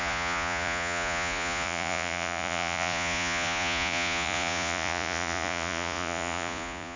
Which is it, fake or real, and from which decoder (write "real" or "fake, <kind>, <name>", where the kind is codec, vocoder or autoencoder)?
fake, vocoder, Vocos